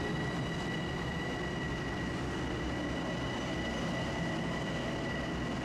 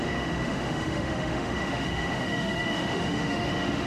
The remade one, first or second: second